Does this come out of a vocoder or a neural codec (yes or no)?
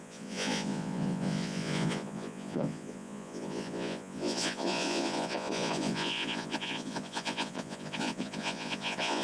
yes